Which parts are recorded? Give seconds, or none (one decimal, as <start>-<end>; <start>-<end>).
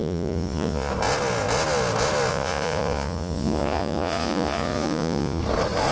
0.9-2.3; 5.4-5.9